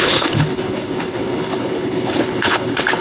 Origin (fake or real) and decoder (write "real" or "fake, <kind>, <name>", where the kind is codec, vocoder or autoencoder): fake, codec, HILCodec